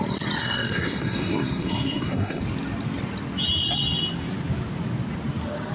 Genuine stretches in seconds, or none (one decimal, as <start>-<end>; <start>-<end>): 0.0-0.4; 2.4-5.7